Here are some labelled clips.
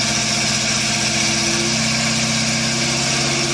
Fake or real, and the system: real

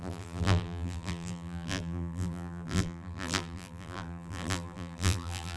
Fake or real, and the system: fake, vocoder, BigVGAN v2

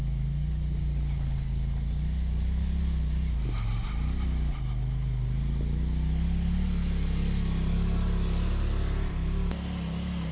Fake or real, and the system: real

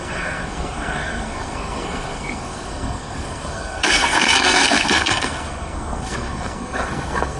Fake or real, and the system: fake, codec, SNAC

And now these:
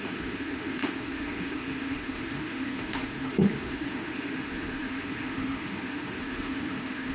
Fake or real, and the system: fake, autoencoder, DAC-VAE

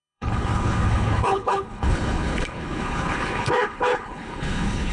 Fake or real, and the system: fake, codec, HILCodec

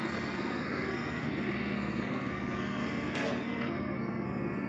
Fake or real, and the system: fake, codec, SNAC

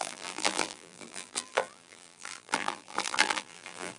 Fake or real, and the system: fake, vocoder, BigVGAN v2